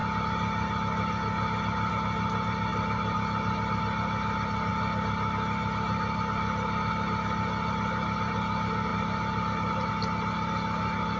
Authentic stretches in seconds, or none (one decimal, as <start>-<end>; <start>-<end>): 0.0-2.7; 3.8-8.9; 9.9-11.2